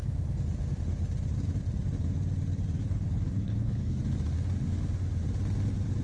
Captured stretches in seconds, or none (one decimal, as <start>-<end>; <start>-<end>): 0.0-2.8; 4.0-6.0